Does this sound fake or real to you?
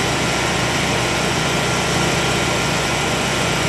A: fake